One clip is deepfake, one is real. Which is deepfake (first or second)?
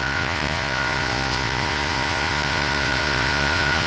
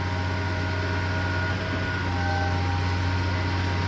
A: first